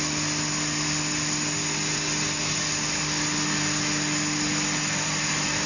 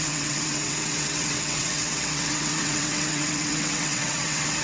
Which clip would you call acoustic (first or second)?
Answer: first